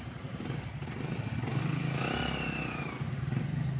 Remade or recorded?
recorded